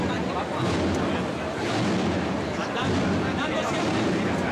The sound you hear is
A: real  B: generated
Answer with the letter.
A